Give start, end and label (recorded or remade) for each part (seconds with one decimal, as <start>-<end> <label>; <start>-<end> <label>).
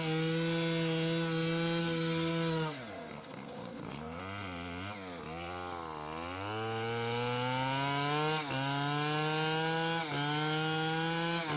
0.0-1.8 recorded; 1.8-4.2 remade; 4.2-11.6 recorded